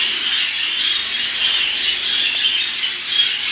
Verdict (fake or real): real